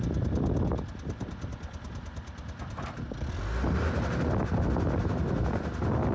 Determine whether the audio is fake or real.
real